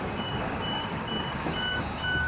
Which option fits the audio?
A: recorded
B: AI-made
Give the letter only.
B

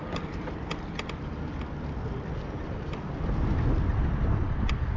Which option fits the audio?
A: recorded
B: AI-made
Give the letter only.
A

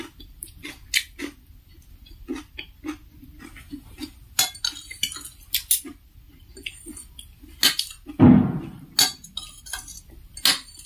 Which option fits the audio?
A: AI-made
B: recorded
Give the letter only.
B